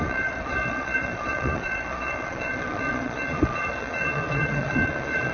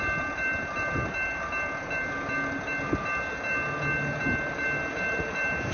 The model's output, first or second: first